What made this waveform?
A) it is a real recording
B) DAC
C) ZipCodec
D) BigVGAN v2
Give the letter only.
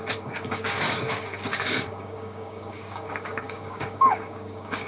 B